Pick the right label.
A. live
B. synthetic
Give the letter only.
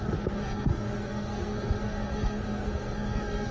B